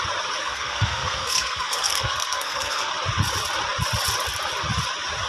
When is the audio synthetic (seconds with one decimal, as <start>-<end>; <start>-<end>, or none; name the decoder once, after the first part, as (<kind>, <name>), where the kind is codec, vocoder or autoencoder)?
0.4-2.9 (codec, SNAC)